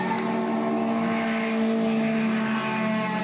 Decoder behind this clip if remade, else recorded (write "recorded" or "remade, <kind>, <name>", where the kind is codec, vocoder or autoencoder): recorded